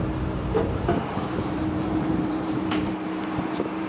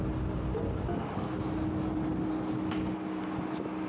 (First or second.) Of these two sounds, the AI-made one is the first